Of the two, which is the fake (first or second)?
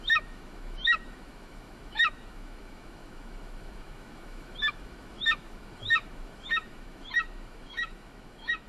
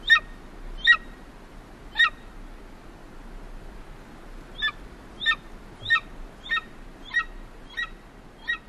first